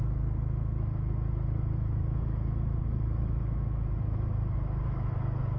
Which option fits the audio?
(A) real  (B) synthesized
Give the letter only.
B